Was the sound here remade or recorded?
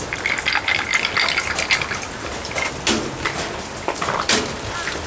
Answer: recorded